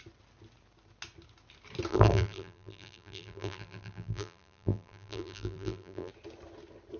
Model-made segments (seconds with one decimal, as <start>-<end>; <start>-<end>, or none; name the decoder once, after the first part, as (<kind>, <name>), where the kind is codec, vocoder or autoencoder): 1.9-6.1 (vocoder, BigVGAN v2)